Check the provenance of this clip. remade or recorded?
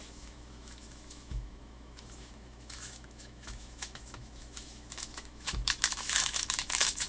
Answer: remade